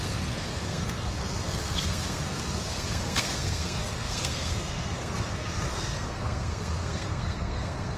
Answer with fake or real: fake